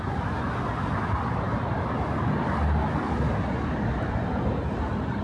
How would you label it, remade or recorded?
recorded